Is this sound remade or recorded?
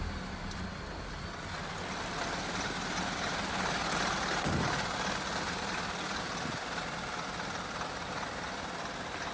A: recorded